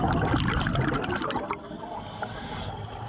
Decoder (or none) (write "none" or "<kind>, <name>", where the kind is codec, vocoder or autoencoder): none